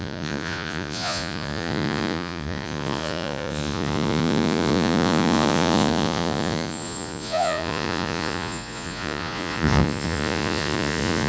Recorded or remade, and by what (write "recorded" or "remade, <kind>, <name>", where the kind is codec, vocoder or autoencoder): remade, vocoder, Vocos